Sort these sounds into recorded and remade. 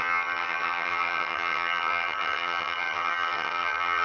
remade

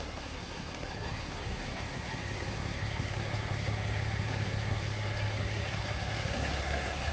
remade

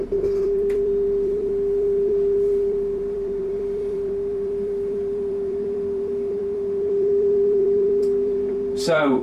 remade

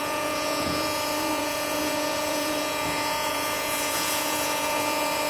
remade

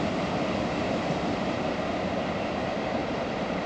remade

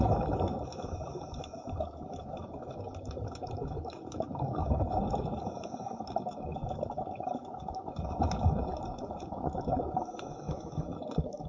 remade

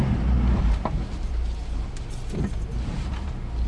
recorded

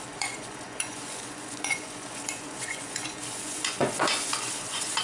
remade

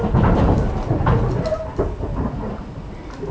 recorded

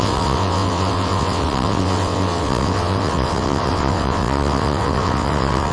remade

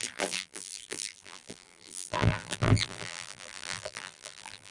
remade